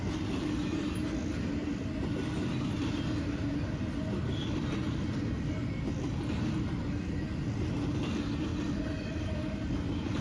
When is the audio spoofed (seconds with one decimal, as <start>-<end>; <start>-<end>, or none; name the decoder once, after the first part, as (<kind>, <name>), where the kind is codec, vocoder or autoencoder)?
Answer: 1.6-2.6 (vocoder, BigVGAN v2); 4.4-5.2; 8.5-9.2